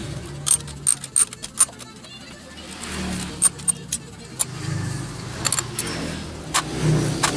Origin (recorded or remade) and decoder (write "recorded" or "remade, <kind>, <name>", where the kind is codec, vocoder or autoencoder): recorded